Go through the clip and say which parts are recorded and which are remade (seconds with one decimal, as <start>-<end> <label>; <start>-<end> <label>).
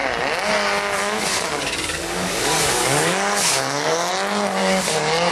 0.0-1.0 recorded; 1.0-4.1 remade; 4.1-4.6 recorded; 4.6-5.3 remade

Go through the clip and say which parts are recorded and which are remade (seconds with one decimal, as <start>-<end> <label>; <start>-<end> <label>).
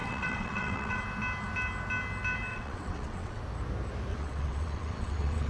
0.0-1.0 remade; 1.0-2.5 recorded; 2.5-3.4 remade; 3.4-4.1 recorded; 4.1-5.5 remade